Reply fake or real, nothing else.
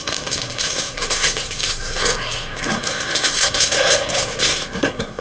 fake